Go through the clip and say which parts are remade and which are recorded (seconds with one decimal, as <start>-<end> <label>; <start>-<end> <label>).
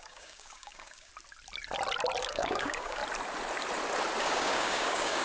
0.0-1.1 remade; 1.1-2.2 recorded; 2.2-3.0 remade; 3.0-4.2 recorded; 4.2-5.2 remade